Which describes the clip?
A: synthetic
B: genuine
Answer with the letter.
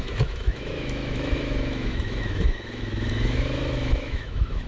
A